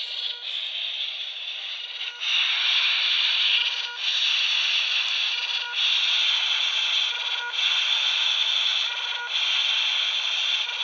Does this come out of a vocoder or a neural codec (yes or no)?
no